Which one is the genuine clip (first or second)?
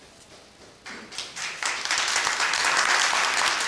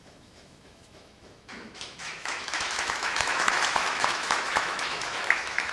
first